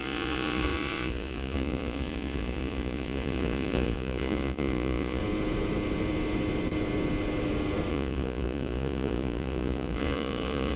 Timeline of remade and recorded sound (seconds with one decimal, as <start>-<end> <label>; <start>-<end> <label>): 0.0-5.2 remade; 5.2-7.9 recorded; 7.9-10.8 remade